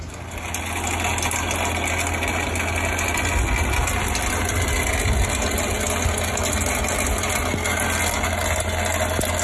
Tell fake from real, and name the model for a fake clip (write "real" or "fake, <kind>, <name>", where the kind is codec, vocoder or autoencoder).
real